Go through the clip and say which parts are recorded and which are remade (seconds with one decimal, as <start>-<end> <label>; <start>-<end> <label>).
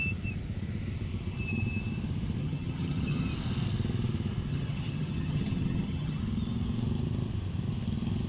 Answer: 0.0-2.4 recorded; 2.4-3.3 remade; 3.3-4.5 recorded; 4.5-6.2 remade; 6.2-8.3 recorded